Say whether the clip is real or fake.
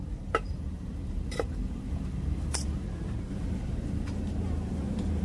fake